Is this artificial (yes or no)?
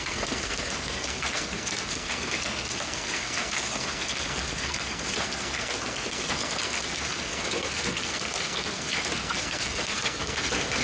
yes